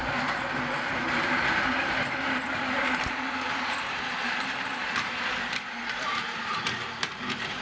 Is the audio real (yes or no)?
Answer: no